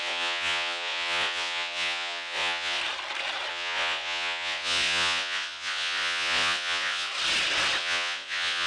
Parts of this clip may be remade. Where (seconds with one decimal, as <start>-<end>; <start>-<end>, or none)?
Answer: 0.0-2.8; 3.5-7.1; 7.8-8.7